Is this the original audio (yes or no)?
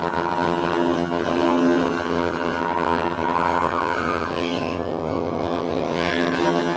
no